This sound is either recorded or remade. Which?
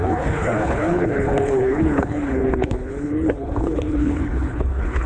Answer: remade